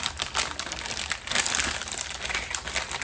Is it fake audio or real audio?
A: real